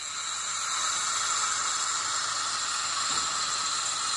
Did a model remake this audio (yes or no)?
no